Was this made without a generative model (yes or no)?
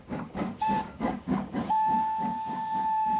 no